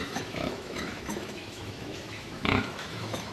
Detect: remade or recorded remade